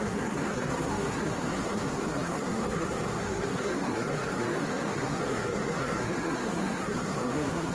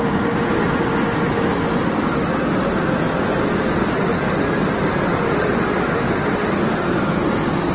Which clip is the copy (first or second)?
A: first